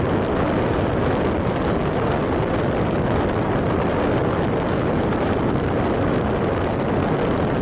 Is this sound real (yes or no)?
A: yes